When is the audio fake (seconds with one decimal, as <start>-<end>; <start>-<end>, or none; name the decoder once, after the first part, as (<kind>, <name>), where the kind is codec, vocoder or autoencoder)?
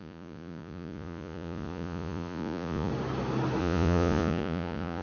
0.0-2.9 (vocoder, Vocos); 3.6-5.0